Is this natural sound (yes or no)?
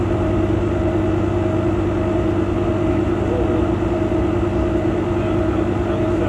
yes